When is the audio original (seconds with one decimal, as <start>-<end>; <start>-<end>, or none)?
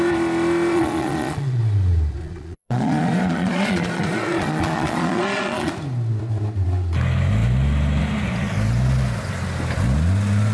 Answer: 0.0-0.7; 1.6-2.2; 5.7-10.5